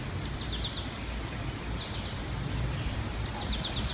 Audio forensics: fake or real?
real